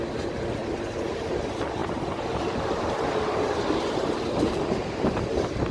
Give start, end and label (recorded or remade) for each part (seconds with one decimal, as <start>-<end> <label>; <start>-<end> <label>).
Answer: 0.0-0.6 recorded; 0.6-1.4 remade; 1.4-1.8 recorded; 1.8-5.2 remade; 5.2-5.7 recorded